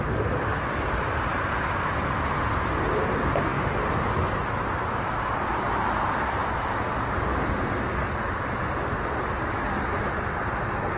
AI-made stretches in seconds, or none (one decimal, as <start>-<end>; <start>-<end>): none